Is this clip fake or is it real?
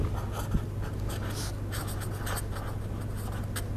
real